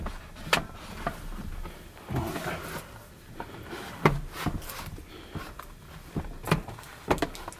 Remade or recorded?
recorded